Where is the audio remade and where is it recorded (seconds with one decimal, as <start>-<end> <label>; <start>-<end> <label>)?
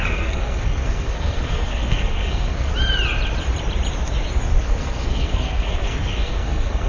0.0-2.7 remade; 2.7-4.6 recorded; 4.6-6.9 remade